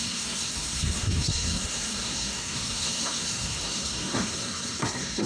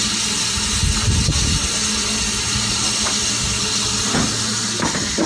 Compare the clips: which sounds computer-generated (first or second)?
first